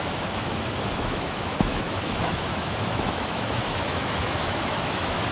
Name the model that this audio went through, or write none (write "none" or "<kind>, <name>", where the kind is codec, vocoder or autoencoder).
autoencoder, DAC-VAE